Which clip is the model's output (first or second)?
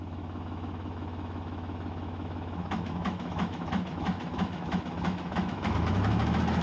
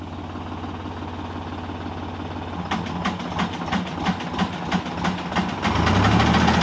first